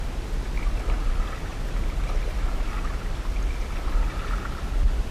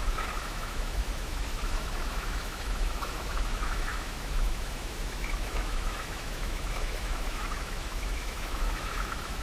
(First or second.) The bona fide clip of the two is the first